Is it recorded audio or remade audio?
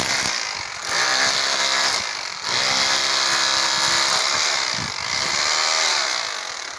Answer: recorded